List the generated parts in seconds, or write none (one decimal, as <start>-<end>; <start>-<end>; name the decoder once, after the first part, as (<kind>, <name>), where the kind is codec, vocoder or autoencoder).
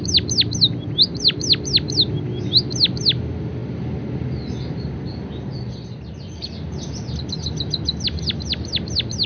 none